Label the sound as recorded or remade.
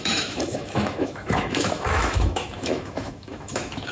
remade